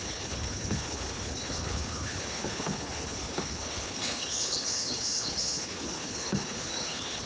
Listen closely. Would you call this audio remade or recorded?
remade